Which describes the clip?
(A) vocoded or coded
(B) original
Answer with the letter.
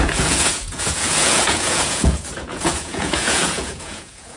A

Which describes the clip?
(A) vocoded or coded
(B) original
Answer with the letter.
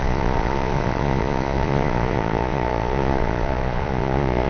A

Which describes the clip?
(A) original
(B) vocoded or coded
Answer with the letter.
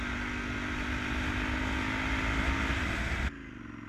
A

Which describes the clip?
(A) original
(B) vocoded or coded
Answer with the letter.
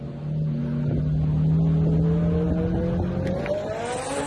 A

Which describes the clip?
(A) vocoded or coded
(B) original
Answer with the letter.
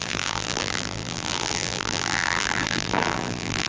A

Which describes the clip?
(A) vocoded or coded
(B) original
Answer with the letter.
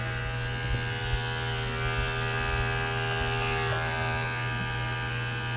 B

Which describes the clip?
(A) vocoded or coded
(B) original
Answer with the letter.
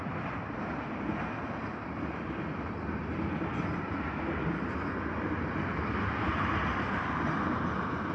B